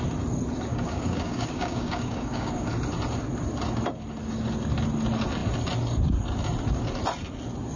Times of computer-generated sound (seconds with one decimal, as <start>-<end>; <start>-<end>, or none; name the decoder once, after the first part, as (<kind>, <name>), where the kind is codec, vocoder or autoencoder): 0.7-2.7 (codec, DAC)